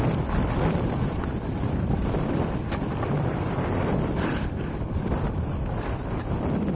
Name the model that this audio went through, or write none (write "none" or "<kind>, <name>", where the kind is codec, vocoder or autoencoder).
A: vocoder, BigVGAN v2